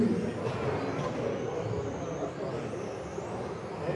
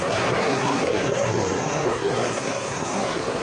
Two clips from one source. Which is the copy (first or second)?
second